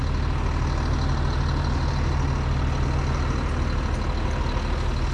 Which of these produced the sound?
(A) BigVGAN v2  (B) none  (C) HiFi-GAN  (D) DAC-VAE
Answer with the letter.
B